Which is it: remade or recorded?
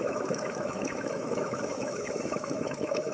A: remade